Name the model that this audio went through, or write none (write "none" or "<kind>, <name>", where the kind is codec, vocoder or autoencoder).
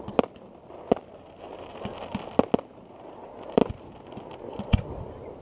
none